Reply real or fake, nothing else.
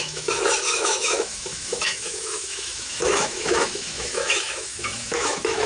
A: fake